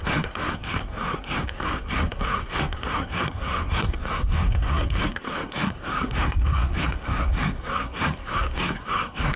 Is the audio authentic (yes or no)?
no